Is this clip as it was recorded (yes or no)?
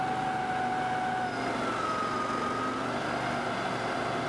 yes